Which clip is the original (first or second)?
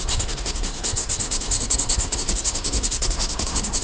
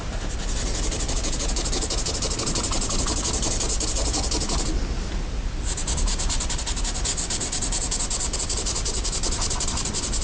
second